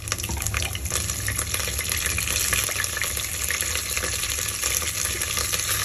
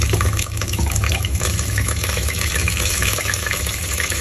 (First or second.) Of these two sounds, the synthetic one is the second